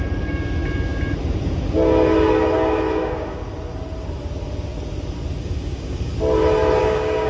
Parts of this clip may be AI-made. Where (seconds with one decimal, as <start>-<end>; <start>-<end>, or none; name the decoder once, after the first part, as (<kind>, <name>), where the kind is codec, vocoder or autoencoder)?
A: 0.0-0.6 (codec, DAC); 2.9-3.4; 5.4-6.1; 6.8-7.3